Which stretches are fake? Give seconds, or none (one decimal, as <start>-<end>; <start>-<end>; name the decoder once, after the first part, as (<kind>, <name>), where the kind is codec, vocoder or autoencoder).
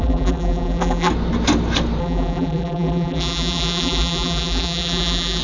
0.0-1.1 (vocoder, BigVGAN v2); 2.0-5.4